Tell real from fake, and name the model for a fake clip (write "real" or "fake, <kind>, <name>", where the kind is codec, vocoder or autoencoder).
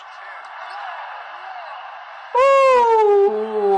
real